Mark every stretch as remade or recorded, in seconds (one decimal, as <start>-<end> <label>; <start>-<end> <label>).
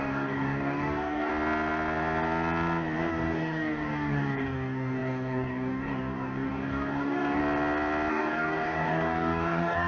0.0-1.3 remade; 1.3-3.1 recorded; 3.1-7.4 remade; 7.4-8.1 recorded; 8.1-9.9 remade